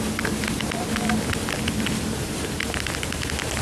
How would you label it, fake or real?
real